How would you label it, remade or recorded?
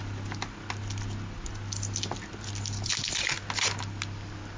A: recorded